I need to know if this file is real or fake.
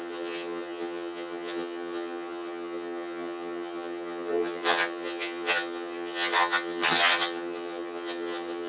fake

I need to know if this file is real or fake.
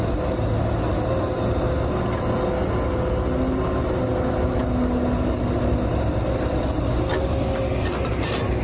real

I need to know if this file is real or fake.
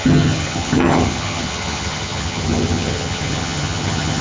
fake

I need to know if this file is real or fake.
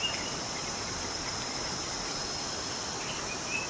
real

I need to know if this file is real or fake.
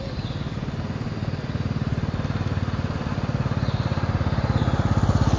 real